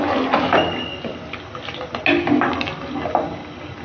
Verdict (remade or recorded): recorded